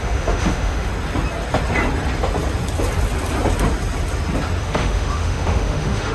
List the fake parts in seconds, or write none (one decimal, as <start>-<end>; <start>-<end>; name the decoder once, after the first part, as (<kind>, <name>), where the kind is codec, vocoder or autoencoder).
0.0-0.9 (autoencoder, DAC-VAE); 4.6-6.1